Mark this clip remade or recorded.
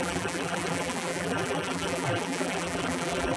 remade